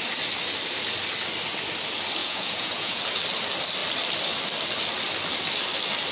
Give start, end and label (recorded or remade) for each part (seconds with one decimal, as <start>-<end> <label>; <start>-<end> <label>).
0.0-2.2 recorded; 2.2-3.0 remade; 3.0-6.1 recorded